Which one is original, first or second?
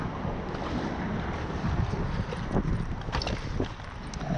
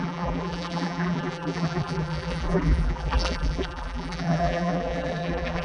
first